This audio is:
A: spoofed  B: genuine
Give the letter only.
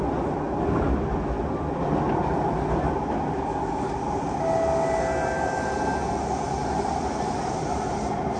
B